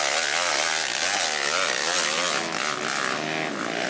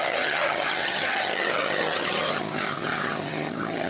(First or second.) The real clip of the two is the first